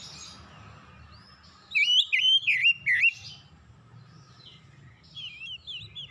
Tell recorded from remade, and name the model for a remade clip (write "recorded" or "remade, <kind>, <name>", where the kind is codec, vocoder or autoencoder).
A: recorded